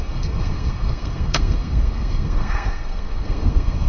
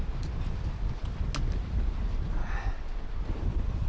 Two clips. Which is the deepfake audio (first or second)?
first